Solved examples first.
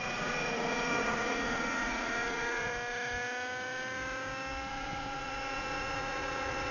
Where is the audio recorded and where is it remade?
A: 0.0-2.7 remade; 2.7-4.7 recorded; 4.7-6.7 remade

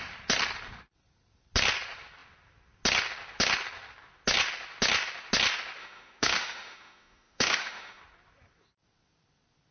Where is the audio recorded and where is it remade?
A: 0.0-5.8 recorded; 5.8-8.0 remade; 8.0-9.7 recorded

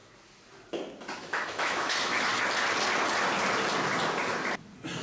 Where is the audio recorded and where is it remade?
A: 0.0-1.2 recorded; 1.2-2.3 remade; 2.3-5.0 recorded

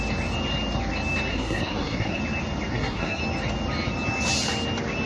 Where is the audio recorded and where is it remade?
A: 0.0-1.3 recorded; 1.3-2.2 remade; 2.2-2.7 recorded; 2.7-3.2 remade; 3.2-5.1 recorded

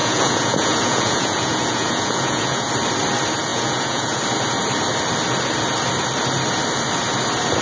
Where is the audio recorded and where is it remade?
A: 0.0-2.7 remade; 2.7-3.5 recorded; 3.5-4.2 remade; 4.2-7.6 recorded

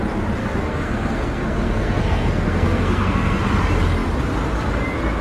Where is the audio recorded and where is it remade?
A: 0.0-0.4 recorded; 0.4-3.4 remade; 3.4-5.2 recorded

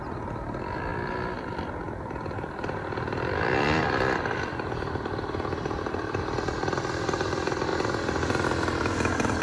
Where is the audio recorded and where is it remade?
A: 0.0-0.9 recorded; 0.9-6.2 remade; 6.2-9.4 recorded

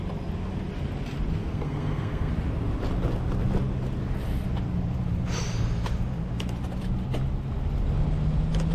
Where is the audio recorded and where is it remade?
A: 0.0-1.4 recorded; 1.4-2.3 remade; 2.3-8.7 recorded